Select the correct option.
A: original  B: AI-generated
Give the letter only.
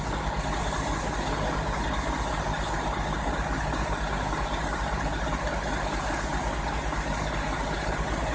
A